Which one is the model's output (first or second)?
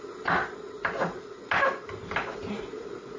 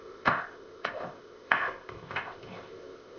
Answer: second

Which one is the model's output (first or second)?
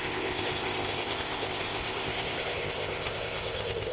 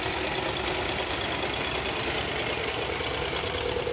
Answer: first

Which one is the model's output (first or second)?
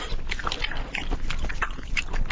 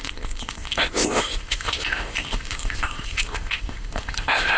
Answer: second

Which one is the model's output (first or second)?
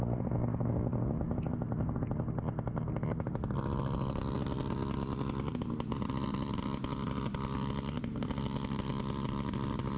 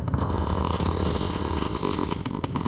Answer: second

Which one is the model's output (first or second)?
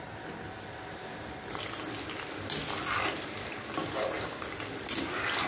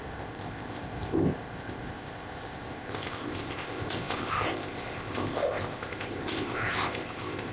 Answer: second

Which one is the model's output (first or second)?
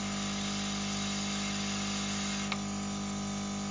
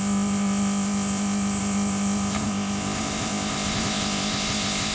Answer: second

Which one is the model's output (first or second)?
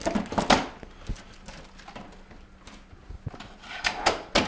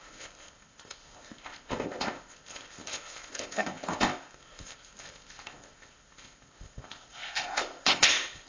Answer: second